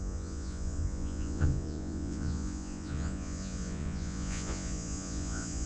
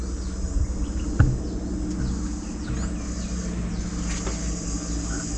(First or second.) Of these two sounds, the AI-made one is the first